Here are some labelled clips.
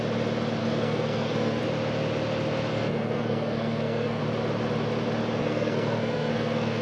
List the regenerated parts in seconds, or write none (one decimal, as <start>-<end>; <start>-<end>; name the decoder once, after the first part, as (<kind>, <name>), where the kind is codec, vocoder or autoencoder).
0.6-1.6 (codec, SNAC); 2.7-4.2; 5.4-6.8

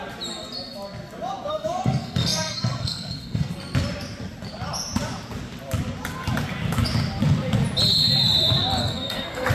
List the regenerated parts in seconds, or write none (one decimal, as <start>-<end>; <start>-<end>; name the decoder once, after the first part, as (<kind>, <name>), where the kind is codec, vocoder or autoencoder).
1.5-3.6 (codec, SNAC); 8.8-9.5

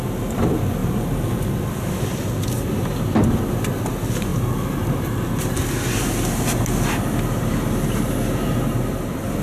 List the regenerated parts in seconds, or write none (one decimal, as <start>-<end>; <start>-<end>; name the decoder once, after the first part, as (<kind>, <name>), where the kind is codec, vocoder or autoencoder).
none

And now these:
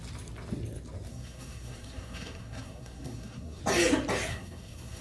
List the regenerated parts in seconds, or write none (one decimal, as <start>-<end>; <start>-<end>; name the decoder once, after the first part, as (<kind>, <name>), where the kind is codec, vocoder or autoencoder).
1.1-3.6 (codec, SNAC); 4.3-5.0

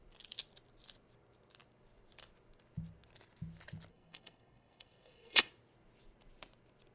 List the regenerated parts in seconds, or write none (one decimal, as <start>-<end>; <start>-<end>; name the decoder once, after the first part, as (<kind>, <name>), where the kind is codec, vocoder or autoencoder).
3.9-5.5 (codec, SNAC)

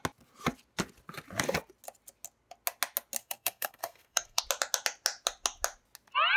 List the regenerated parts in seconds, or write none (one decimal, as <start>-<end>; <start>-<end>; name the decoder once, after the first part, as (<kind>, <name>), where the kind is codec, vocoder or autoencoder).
3.2-4.4 (codec, SNAC)

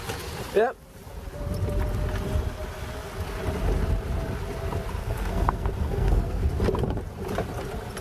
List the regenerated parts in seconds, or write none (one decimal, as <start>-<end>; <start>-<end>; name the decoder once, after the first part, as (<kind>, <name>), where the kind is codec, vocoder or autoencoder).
5.0-6.5 (codec, SNAC)

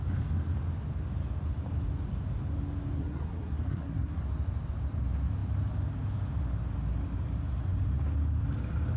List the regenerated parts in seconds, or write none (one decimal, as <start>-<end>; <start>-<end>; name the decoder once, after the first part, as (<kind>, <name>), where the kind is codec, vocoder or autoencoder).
3.0-4.2 (codec, SNAC)